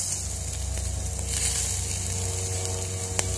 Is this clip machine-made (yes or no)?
no